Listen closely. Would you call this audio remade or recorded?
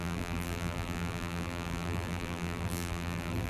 remade